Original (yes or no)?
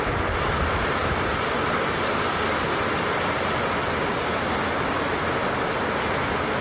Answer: yes